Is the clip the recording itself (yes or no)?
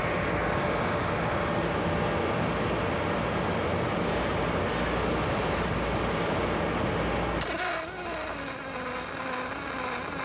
yes